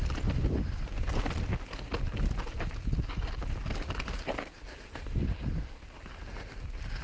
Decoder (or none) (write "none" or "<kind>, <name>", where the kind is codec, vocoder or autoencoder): none